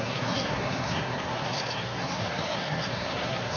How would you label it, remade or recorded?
remade